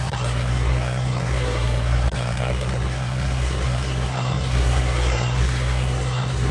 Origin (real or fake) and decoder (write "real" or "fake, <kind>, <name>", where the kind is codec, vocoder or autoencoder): fake, codec, SNAC